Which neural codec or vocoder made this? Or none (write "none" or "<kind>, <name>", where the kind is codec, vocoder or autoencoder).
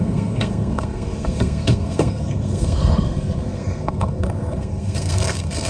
codec, SNAC